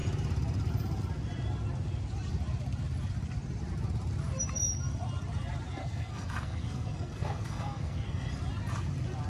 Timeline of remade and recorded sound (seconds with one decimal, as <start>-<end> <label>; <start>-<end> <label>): 0.0-5.8 recorded; 5.8-8.3 remade; 8.3-9.3 recorded